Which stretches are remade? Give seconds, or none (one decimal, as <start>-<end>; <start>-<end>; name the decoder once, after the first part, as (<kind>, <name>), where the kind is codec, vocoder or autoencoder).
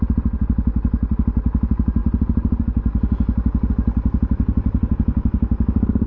none